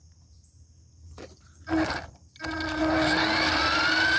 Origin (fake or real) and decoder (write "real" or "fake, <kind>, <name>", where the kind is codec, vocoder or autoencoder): real